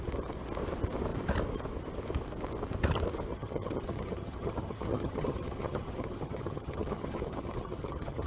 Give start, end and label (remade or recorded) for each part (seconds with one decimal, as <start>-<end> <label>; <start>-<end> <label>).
0.0-3.3 recorded; 3.3-8.3 remade